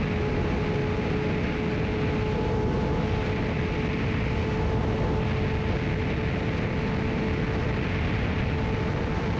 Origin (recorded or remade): recorded